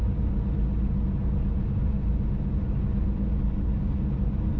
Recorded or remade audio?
recorded